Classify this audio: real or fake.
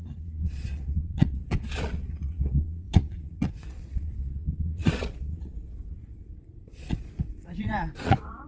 fake